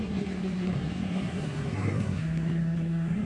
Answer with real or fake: fake